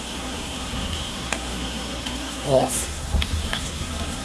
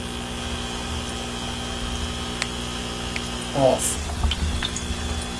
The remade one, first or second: first